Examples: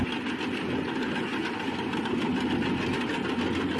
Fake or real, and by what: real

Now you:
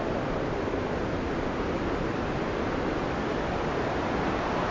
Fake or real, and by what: real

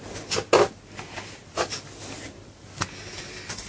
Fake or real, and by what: real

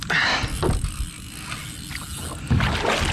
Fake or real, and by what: real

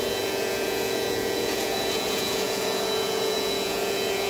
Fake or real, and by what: fake, vocoder, Vocos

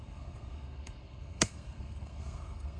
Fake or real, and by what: fake, codec, SNAC